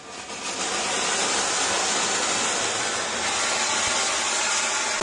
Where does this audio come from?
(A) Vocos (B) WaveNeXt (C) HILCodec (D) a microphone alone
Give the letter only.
D